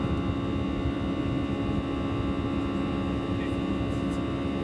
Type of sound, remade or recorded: recorded